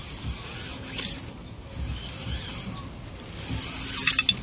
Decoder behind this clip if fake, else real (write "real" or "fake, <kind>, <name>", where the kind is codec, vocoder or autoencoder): real